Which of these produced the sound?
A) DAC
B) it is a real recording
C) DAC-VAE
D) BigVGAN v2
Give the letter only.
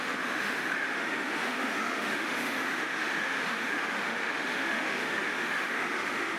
C